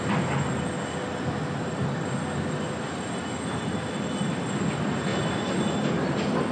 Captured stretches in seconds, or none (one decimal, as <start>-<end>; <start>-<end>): 0.0-6.5